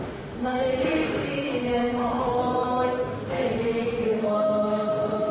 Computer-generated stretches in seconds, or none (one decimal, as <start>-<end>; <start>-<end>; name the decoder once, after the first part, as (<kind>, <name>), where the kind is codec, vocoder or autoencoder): 0.0-2.4 (autoencoder, DAC-VAE); 3.3-5.3